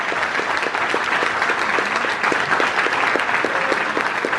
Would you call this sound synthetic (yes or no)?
no